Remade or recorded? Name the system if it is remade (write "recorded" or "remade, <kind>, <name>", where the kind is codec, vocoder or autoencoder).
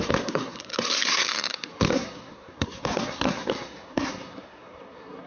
remade, codec, SNAC